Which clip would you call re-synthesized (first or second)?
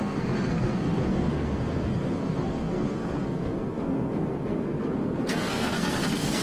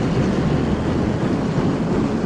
first